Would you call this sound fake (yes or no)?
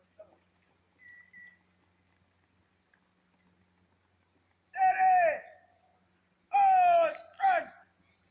no